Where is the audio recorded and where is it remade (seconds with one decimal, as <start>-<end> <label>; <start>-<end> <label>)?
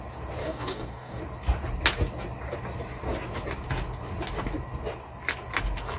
0.0-0.4 recorded; 0.4-1.2 remade; 1.2-6.0 recorded